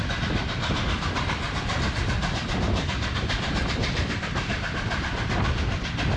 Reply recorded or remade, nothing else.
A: remade